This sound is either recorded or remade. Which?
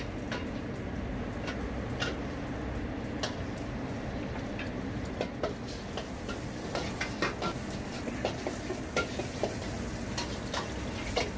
recorded